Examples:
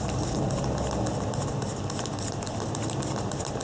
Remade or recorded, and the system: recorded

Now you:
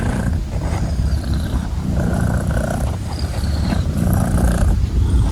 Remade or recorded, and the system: remade, vocoder, BigVGAN v2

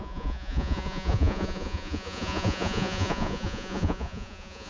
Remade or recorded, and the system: remade, vocoder, Vocos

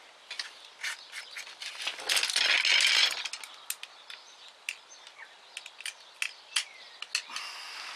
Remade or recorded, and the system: recorded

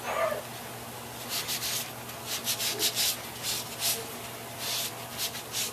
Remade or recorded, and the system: recorded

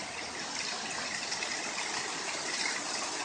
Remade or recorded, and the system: recorded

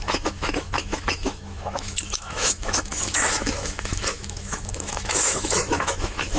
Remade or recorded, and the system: remade, autoencoder, DAC-VAE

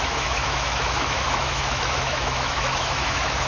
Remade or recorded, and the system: remade, autoencoder, DAC-VAE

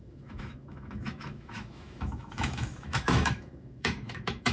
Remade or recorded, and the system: remade, autoencoder, DAC-VAE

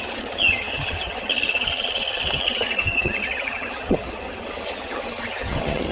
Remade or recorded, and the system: remade, vocoder, HiFi-GAN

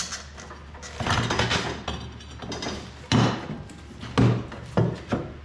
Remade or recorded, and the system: recorded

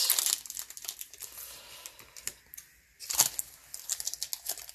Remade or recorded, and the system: recorded